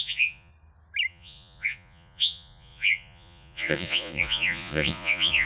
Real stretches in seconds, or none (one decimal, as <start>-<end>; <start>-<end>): 0.5-1.1